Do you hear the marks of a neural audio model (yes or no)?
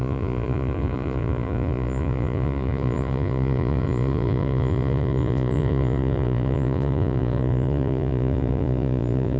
yes